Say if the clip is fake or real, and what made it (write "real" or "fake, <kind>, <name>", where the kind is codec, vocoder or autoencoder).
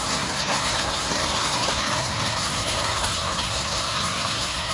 fake, codec, SNAC